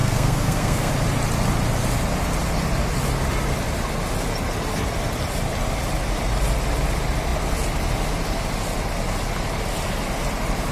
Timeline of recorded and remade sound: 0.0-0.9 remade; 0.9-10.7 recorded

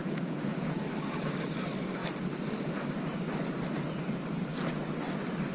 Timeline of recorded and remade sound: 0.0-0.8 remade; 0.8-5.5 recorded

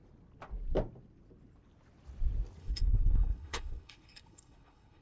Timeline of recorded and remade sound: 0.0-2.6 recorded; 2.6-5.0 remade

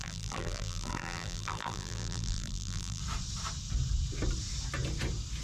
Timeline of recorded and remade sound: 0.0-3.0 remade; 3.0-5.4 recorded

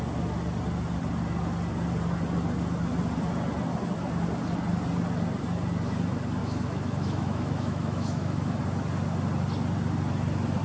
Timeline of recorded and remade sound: 0.0-6.4 recorded; 6.4-8.6 remade; 8.6-10.6 recorded

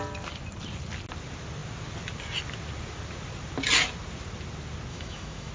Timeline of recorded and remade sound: 0.0-4.9 recorded; 4.9-5.5 remade

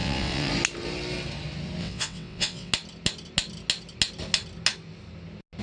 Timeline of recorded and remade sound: 0.0-0.5 remade; 0.5-1.8 recorded; 1.8-2.7 remade; 2.7-5.6 recorded